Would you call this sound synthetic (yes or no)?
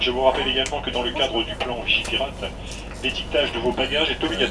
no